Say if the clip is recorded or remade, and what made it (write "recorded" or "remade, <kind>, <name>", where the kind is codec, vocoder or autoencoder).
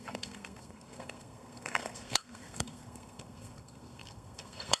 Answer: remade, codec, SNAC